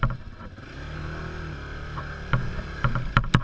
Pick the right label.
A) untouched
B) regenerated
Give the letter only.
A